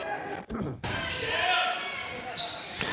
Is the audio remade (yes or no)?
no